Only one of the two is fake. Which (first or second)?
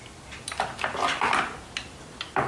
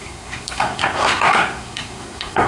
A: second